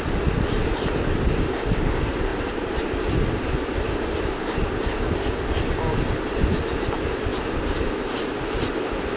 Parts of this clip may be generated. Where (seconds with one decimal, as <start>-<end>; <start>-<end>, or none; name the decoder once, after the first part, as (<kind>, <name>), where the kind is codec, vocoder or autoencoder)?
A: 2.3-2.9 (vocoder, BigVGAN v2); 7.3-8.1

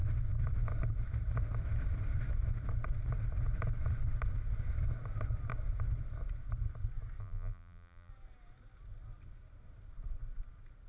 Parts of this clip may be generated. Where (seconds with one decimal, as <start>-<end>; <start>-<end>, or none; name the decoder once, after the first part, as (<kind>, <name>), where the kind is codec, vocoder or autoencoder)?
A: 7.2-8.1 (vocoder, BigVGAN v2)

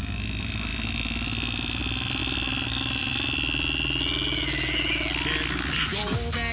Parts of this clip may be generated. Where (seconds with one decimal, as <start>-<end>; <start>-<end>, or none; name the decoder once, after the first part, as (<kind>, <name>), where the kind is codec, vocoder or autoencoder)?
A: none